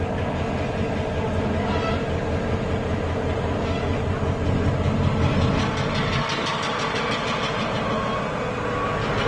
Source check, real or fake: real